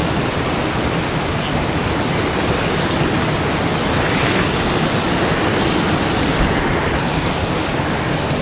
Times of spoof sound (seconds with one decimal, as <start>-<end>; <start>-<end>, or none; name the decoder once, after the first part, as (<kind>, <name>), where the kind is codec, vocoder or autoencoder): none